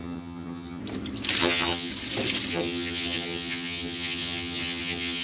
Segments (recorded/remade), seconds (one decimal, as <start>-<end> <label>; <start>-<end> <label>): 0.0-0.8 remade; 0.8-1.4 recorded; 1.4-1.9 remade; 1.9-2.5 recorded; 2.5-5.2 remade